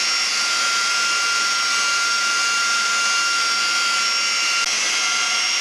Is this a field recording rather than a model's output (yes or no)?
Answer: yes